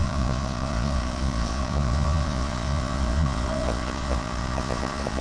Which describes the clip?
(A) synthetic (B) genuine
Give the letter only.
A